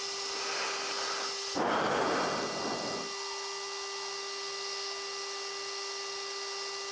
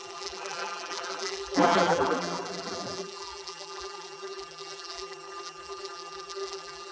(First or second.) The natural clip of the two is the first